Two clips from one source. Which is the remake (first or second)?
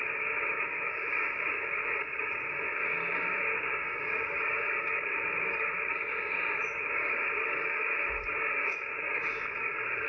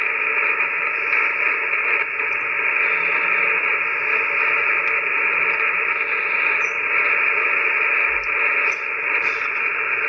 first